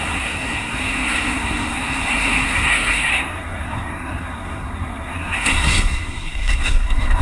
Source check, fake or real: fake